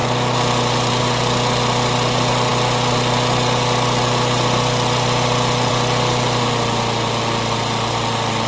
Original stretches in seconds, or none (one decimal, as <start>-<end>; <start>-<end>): 1.0-8.5